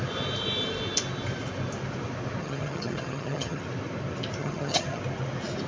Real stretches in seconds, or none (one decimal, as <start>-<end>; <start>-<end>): 0.0-2.4; 3.6-4.4; 5.0-5.7